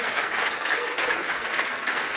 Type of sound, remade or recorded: remade